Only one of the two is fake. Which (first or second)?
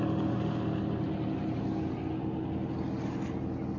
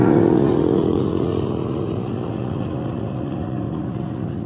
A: second